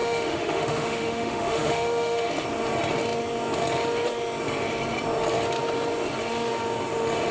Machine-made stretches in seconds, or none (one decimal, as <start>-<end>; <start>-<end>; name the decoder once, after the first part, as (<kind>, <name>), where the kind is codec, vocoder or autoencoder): 0.0-2.3 (autoencoder, DAC-VAE)